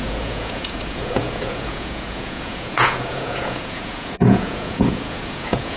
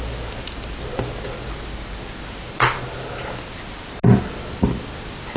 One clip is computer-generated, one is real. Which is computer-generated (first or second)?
first